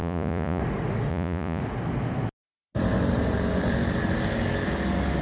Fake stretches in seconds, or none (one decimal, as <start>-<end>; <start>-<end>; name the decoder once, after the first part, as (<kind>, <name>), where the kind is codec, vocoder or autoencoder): 0.0-0.6 (vocoder, Vocos); 1.1-1.6